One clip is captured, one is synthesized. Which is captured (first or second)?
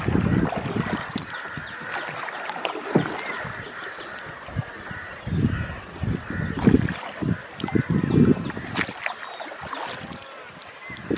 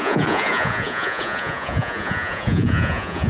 first